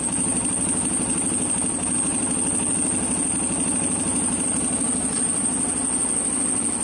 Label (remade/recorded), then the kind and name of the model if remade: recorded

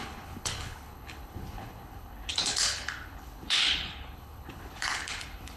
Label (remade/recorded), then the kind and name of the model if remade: remade, codec, HILCodec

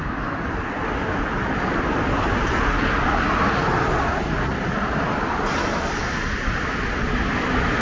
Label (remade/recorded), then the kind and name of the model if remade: recorded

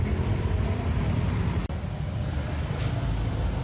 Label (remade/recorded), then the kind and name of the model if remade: recorded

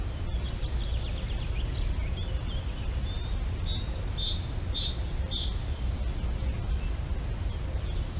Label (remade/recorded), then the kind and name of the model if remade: recorded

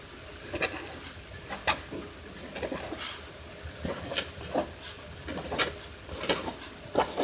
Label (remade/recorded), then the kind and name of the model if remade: recorded